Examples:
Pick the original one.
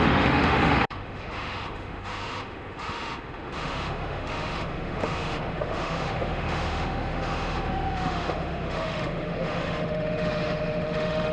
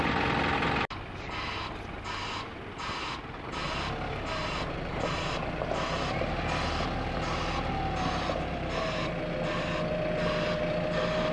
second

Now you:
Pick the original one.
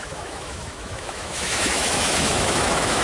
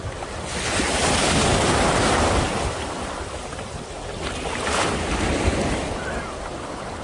second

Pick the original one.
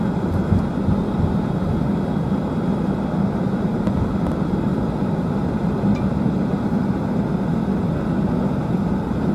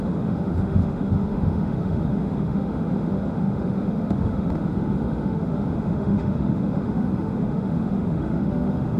first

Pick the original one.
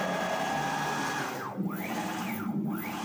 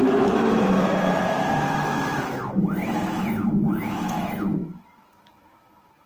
first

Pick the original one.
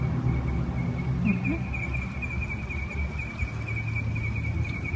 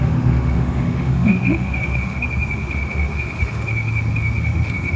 first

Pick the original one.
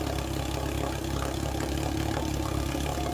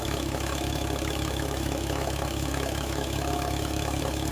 first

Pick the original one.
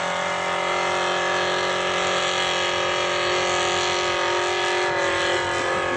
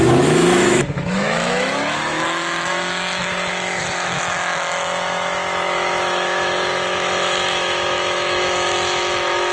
first